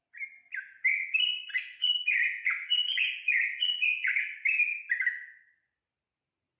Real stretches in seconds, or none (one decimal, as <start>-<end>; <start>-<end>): 0.0-1.2; 4.2-6.6